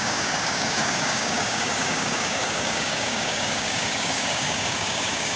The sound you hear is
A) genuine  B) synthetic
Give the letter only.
B